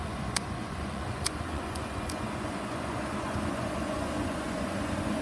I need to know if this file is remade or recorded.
remade